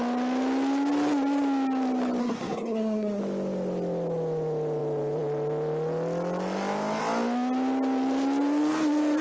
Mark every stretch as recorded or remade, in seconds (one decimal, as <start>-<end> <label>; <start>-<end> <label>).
0.0-2.2 recorded; 2.2-3.2 remade; 3.2-9.2 recorded